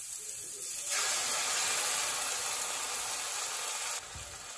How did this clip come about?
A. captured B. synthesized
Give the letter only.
A